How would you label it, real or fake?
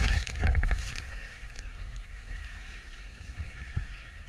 fake